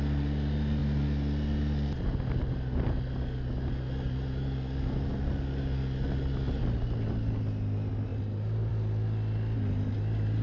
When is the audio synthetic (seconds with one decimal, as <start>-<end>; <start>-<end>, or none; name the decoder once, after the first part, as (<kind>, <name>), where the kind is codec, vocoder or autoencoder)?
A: none